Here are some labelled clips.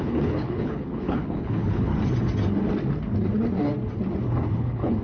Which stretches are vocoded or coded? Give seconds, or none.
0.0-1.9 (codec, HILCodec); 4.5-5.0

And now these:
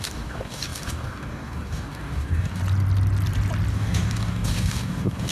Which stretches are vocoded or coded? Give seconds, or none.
0.0-2.6 (codec, DAC); 3.7-5.3

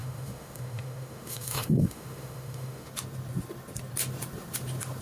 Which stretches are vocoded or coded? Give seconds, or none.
0.0-2.9 (autoencoder, DAC-VAE)

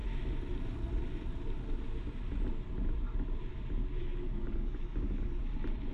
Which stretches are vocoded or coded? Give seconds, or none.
4.0-5.4 (codec, DAC)

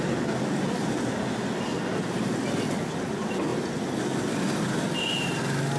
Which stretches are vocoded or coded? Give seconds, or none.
none